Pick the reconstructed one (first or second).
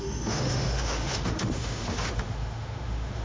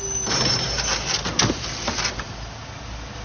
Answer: first